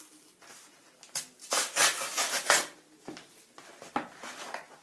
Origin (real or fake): real